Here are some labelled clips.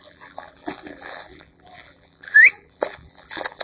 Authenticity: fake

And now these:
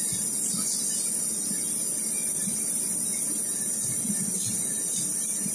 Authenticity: real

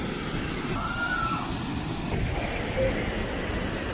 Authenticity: real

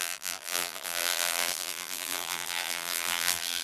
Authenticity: fake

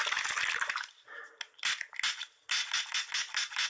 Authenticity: real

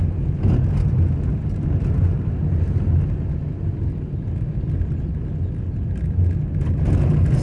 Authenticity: real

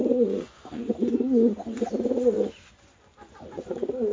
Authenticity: fake